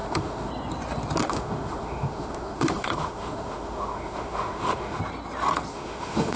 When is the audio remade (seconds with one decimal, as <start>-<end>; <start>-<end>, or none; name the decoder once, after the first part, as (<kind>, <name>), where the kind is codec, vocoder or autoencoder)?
0.0-0.5 (autoencoder, DAC-VAE); 1.2-5.0; 5.7-6.4